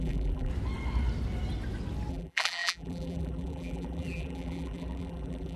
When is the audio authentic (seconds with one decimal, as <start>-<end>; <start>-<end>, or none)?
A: 0.5-2.1